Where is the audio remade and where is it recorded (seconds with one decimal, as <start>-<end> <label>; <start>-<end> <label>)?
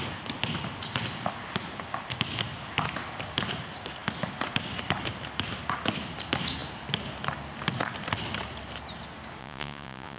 0.0-9.4 recorded; 9.4-10.2 remade